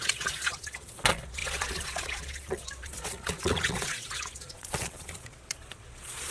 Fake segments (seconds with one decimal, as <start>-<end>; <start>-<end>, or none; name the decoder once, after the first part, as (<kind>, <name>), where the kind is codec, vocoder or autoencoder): 0.0-6.3 (vocoder, Vocos)